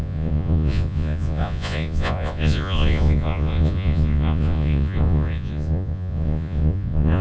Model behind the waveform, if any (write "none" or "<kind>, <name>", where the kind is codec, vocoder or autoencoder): vocoder, Vocos